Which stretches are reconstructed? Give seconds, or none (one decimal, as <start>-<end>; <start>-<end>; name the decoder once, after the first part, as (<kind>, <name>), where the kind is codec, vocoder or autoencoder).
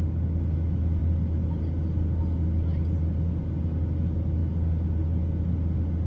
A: none